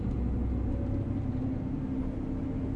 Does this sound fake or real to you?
real